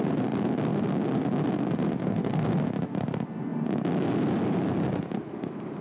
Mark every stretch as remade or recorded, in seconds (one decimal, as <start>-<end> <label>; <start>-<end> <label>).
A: 0.0-2.0 recorded; 2.0-2.5 remade; 2.5-5.8 recorded